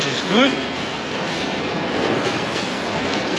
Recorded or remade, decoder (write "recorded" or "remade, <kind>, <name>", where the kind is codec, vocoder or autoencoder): remade, codec, SNAC